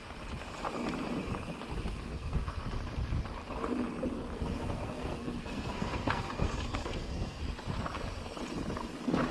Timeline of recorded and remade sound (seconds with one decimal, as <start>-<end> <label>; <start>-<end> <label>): 0.0-1.9 recorded; 1.9-2.6 remade; 2.6-4.3 recorded; 4.3-7.4 remade; 7.4-9.3 recorded